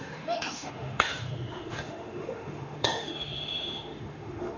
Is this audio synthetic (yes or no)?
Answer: yes